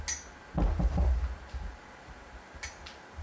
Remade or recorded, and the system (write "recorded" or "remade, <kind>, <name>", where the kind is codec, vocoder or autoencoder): recorded